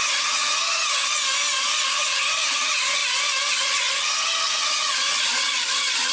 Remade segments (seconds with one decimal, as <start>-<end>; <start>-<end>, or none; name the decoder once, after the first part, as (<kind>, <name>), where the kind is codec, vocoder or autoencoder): 0.0-1.2 (vocoder, HiFi-GAN); 1.9-3.0; 3.5-6.1